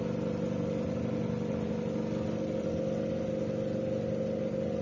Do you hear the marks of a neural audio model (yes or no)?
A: no